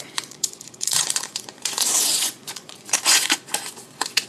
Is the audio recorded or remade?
remade